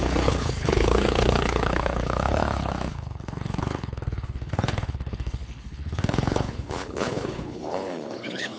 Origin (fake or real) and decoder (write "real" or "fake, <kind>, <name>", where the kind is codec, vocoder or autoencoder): fake, codec, HILCodec